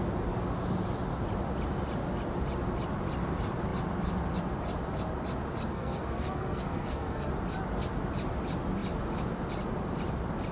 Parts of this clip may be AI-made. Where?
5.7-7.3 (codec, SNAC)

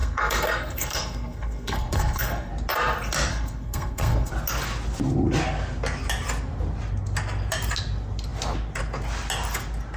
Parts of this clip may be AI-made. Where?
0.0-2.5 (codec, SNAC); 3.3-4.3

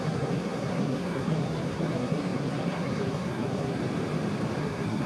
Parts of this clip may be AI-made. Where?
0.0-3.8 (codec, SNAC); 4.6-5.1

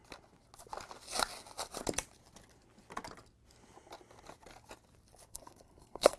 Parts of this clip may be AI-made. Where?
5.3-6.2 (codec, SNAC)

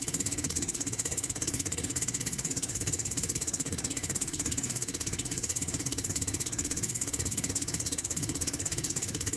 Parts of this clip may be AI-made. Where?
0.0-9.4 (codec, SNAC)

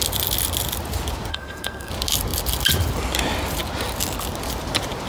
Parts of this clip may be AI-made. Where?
1.3-1.9 (codec, SNAC)